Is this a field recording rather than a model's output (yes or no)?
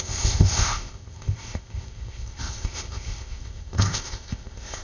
no